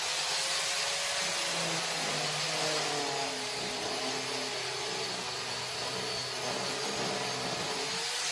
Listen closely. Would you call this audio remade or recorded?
recorded